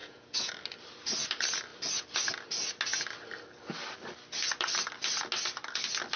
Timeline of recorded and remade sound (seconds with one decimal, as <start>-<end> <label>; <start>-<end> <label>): 0.0-0.5 remade; 0.5-6.2 recorded